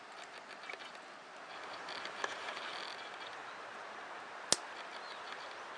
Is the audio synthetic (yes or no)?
no